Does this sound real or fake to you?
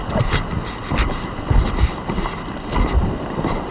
real